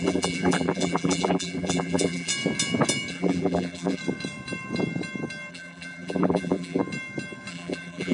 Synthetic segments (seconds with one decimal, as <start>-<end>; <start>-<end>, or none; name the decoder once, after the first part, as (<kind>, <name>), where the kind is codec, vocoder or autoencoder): 0.0-2.3 (vocoder, BigVGAN v2); 3.1-4.0; 5.5-6.8; 7.5-8.1